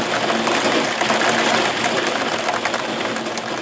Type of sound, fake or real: real